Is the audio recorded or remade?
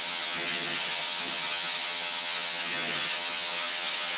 remade